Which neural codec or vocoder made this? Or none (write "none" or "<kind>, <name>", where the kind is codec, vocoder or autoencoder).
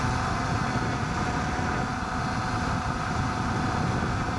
none